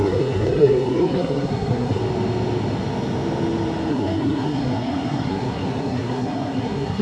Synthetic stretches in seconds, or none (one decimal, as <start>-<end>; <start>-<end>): 0.0-2.0; 3.9-7.0